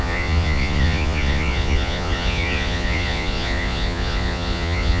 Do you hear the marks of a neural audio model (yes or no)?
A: yes